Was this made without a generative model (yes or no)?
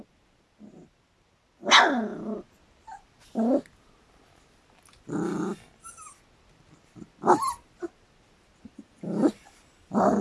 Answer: yes